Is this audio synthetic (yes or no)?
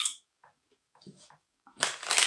yes